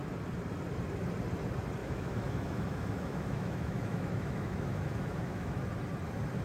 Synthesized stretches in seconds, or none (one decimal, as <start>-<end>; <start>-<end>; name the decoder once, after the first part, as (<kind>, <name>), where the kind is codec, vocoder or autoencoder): 1.8-5.6 (autoencoder, DAC-VAE)